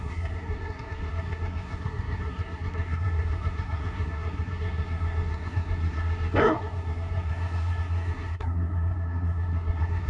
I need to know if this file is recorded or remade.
remade